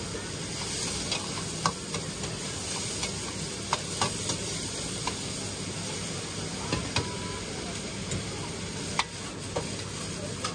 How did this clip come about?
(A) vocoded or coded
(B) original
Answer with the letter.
B